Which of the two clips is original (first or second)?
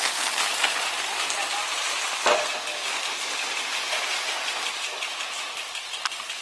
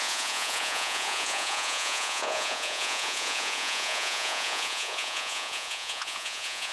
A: first